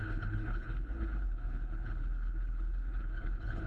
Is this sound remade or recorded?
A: remade